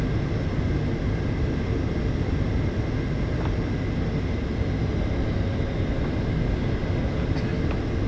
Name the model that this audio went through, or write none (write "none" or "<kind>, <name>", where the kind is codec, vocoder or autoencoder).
none